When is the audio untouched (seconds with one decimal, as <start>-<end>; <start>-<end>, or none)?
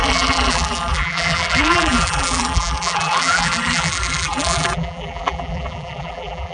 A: none